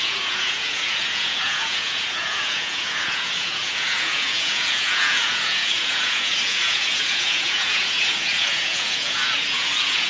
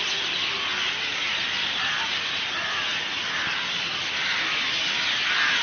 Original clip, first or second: second